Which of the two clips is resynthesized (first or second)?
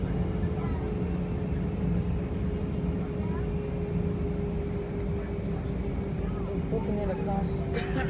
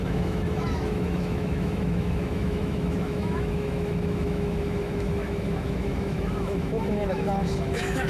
second